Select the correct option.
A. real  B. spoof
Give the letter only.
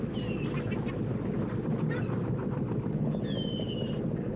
A